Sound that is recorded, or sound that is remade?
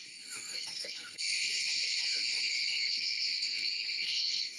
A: remade